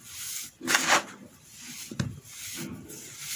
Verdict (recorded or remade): recorded